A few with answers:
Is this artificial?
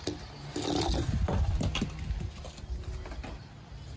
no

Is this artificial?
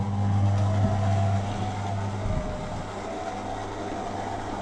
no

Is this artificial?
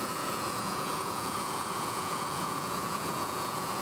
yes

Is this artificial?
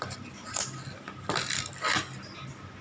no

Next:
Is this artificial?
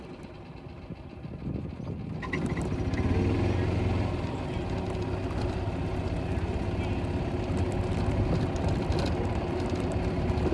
no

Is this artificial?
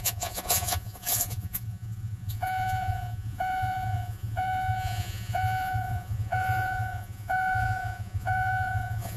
yes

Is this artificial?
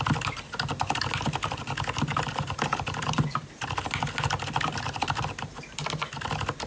no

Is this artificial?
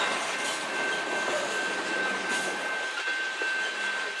no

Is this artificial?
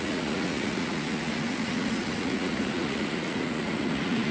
yes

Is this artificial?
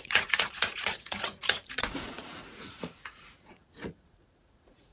yes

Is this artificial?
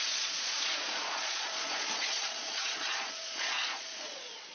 yes